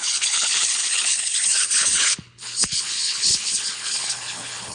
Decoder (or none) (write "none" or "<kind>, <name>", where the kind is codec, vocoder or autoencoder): codec, HILCodec